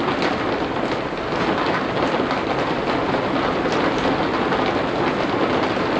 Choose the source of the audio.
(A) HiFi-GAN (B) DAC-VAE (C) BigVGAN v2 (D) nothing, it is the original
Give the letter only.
D